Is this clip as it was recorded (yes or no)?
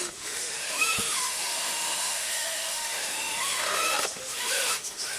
no